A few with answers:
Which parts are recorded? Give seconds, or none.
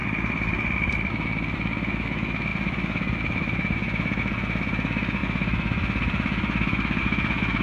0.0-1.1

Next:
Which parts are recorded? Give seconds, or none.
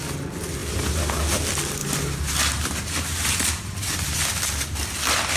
0.0-0.6; 1.2-1.8; 4.2-5.4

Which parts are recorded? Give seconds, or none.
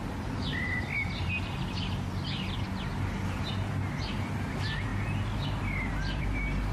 0.0-6.7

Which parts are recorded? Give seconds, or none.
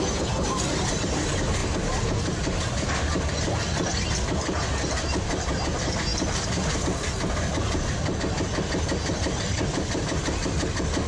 0.0-1.6; 3.3-11.1